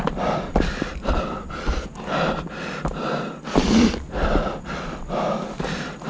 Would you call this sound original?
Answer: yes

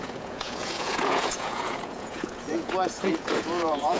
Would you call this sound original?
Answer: no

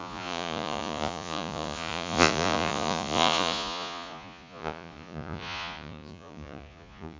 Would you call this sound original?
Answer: no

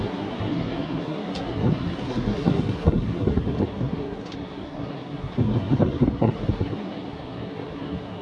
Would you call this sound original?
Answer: no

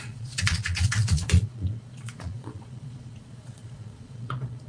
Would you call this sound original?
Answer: no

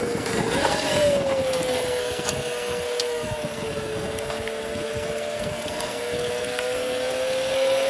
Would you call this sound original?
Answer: no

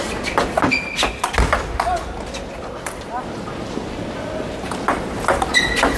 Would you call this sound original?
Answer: yes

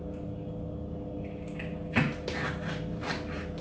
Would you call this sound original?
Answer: yes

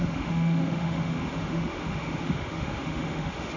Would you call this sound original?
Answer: no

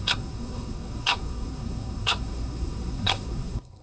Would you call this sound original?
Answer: no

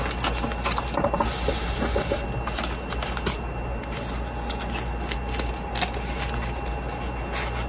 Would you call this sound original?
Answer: yes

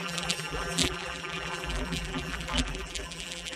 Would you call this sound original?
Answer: no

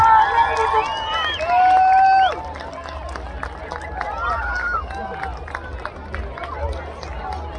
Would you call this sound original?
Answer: yes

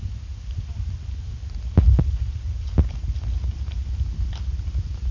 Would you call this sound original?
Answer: yes